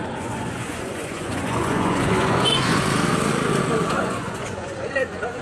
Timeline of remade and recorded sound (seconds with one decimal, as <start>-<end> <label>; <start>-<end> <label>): 0.0-2.8 remade; 2.8-3.8 recorded; 3.8-5.4 remade